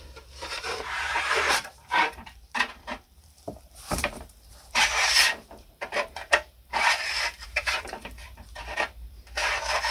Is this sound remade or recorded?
remade